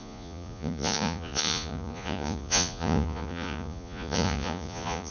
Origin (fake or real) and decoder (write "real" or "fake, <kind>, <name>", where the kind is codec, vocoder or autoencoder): fake, vocoder, Vocos